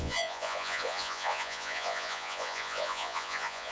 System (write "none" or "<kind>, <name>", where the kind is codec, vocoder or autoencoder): vocoder, Vocos